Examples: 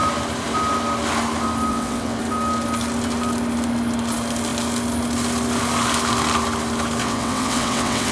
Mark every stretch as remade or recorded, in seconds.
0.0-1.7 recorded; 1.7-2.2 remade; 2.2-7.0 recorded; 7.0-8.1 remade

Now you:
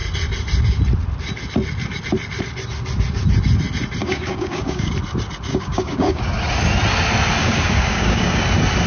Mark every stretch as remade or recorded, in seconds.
0.0-4.0 recorded; 4.0-4.9 remade; 4.9-5.5 recorded; 5.5-6.2 remade; 6.2-7.4 recorded; 7.4-8.4 remade; 8.4-8.9 recorded

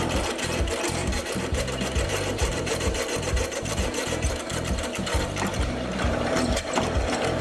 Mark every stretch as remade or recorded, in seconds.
0.0-1.0 recorded; 1.0-1.8 remade; 1.8-2.3 recorded; 2.3-6.5 remade; 6.5-7.4 recorded

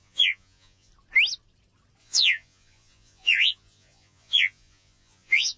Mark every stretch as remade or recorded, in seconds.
0.0-0.9 remade; 0.9-2.0 recorded; 2.0-5.6 remade

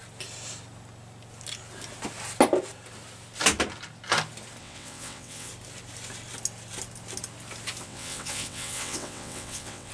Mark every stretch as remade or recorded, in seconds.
0.0-4.6 recorded; 4.6-5.5 remade; 5.5-7.8 recorded; 7.8-9.9 remade

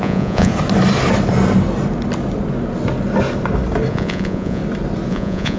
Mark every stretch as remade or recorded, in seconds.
0.0-0.5 remade; 0.5-3.9 recorded; 3.9-4.6 remade; 4.6-5.1 recorded; 5.1-5.6 remade